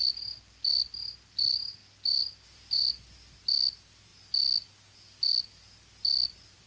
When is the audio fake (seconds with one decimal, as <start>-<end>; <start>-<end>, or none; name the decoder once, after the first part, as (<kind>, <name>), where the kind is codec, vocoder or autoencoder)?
none